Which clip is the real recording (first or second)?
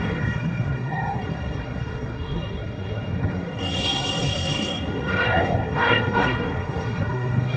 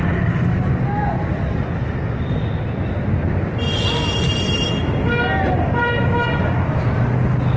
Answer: second